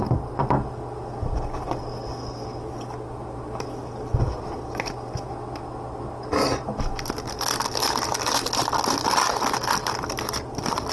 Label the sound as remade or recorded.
recorded